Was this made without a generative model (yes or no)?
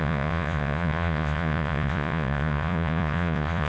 no